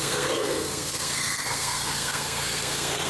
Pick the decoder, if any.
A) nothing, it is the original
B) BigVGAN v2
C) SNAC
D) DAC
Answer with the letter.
C